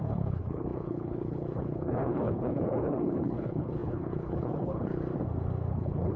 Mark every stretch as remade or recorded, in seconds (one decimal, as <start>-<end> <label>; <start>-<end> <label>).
0.0-4.9 remade; 4.9-5.7 recorded; 5.7-6.2 remade